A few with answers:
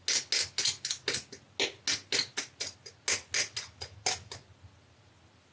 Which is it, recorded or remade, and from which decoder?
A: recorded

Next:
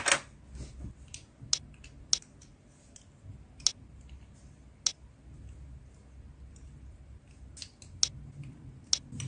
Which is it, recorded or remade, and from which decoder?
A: recorded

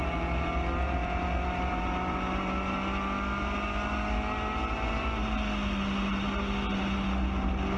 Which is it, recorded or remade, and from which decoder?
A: recorded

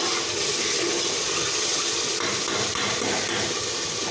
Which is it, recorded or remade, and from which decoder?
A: recorded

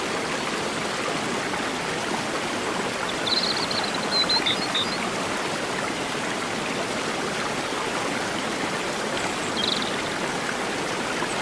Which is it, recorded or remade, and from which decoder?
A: recorded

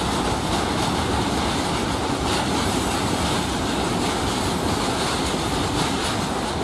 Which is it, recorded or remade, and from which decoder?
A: recorded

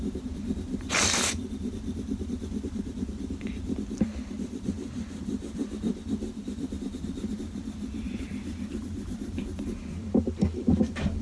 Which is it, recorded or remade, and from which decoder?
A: remade, vocoder, BigVGAN v2